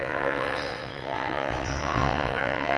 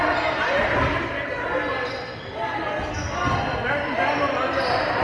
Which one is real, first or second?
second